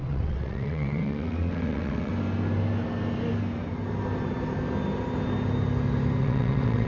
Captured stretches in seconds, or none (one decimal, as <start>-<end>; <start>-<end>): 2.1-6.2

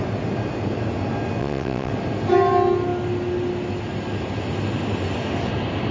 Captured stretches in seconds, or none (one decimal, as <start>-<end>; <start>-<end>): 0.0-1.4; 1.9-5.9

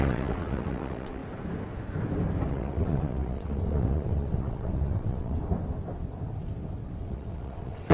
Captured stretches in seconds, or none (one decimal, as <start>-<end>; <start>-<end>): 1.2-2.5; 5.4-7.0

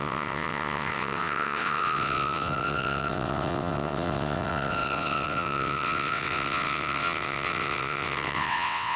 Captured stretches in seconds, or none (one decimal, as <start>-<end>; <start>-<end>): none

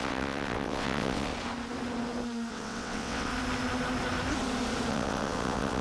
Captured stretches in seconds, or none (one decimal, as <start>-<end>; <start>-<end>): 1.3-2.5; 3.3-4.9

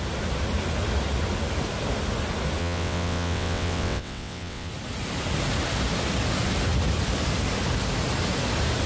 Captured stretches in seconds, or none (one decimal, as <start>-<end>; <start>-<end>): 0.0-2.6; 4.7-8.9